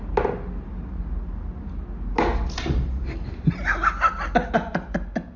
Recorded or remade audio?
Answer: recorded